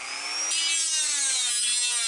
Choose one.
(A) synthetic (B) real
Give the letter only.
B